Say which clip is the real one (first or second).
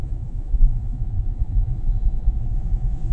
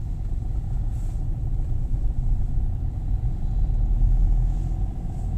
second